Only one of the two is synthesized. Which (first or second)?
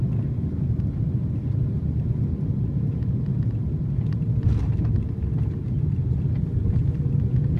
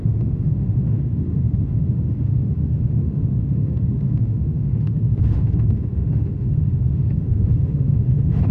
second